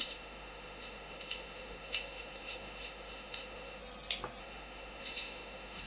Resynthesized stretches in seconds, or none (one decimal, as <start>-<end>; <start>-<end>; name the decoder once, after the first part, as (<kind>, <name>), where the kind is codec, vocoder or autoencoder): 0.0-3.8 (autoencoder, DAC-VAE); 4.4-5.9